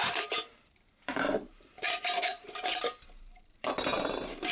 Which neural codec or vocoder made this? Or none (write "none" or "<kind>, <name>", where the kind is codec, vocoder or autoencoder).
vocoder, BigVGAN v2